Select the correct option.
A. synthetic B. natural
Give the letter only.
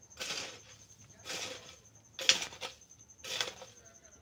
B